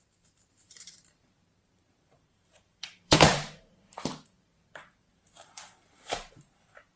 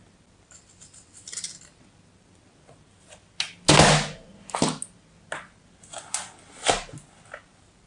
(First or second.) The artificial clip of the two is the first